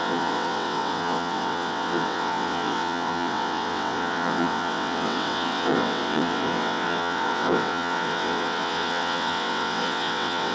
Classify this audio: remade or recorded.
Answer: remade